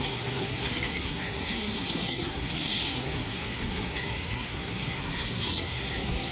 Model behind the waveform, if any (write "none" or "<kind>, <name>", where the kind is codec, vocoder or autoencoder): codec, SNAC